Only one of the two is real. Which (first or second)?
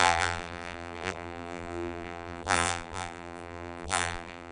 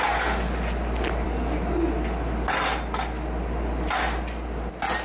second